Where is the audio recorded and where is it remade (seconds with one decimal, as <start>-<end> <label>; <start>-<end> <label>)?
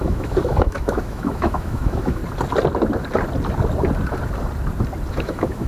0.0-2.2 remade; 2.2-5.1 recorded; 5.1-5.7 remade